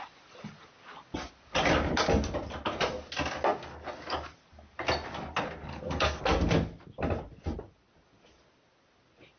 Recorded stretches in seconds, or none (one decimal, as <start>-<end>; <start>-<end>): 0.0-5.7; 6.2-9.4